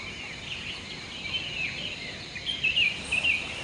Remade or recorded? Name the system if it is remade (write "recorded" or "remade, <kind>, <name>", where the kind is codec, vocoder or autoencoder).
recorded